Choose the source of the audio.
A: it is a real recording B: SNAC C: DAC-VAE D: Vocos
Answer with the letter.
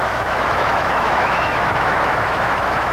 C